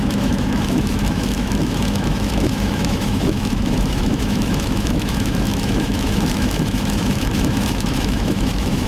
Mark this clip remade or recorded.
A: remade